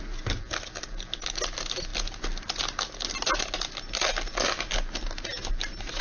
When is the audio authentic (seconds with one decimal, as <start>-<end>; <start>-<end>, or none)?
0.0-6.0